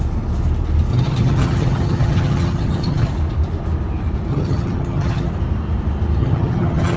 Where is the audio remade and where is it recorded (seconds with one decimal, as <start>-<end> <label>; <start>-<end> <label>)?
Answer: 0.0-0.9 recorded; 0.9-3.1 remade; 3.1-4.3 recorded; 4.3-5.3 remade; 5.3-6.2 recorded; 6.2-7.0 remade

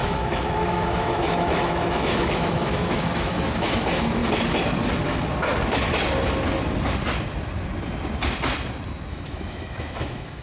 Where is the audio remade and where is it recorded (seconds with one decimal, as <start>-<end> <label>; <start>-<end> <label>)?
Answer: 0.0-4.2 remade; 4.2-9.1 recorded; 9.1-10.4 remade

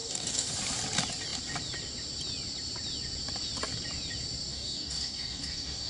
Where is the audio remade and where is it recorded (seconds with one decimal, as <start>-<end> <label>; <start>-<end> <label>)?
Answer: 0.0-0.5 remade; 0.5-4.5 recorded; 4.5-5.9 remade

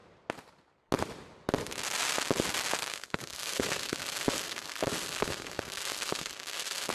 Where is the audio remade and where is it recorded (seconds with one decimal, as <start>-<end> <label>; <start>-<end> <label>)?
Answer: 0.0-2.9 recorded; 2.9-6.9 remade